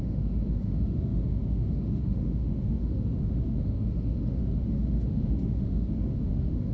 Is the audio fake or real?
fake